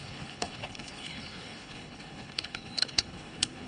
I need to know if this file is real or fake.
fake